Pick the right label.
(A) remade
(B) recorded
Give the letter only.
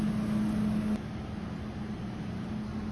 B